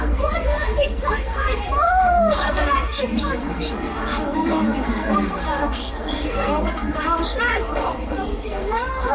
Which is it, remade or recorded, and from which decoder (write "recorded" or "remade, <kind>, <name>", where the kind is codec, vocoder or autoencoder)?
remade, codec, SNAC